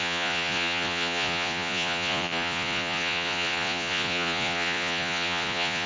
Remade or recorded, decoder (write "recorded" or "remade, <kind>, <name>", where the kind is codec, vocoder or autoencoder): remade, vocoder, Vocos